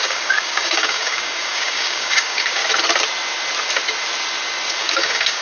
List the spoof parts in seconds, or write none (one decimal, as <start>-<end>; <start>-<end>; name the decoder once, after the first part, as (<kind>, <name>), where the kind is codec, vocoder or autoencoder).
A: 0.0-2.6 (codec, DAC); 4.8-5.4